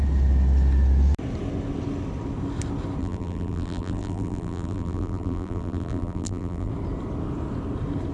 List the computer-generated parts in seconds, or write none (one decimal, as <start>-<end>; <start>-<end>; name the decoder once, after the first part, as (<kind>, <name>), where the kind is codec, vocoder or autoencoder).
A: 3.0-6.7 (vocoder, BigVGAN v2)